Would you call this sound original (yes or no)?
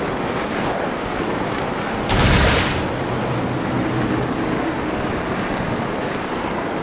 yes